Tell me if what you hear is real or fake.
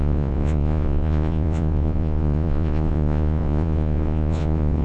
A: fake